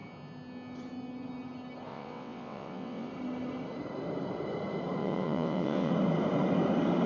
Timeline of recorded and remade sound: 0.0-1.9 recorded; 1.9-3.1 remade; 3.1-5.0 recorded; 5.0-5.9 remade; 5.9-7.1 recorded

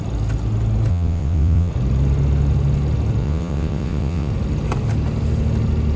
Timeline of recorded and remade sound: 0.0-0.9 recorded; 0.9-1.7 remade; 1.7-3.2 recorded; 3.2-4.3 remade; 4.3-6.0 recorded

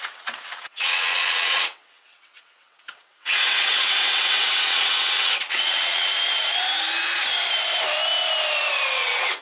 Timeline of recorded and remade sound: 0.0-6.1 remade; 6.1-8.9 recorded; 8.9-9.4 remade